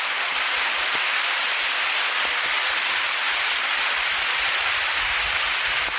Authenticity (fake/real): real